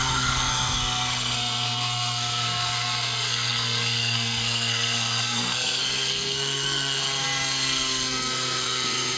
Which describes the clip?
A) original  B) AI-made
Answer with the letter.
B